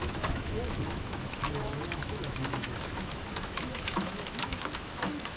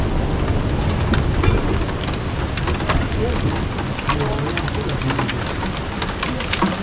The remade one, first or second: first